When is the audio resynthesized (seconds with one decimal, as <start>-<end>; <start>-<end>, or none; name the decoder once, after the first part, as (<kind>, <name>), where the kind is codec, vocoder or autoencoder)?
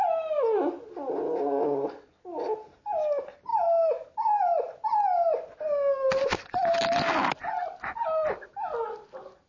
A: none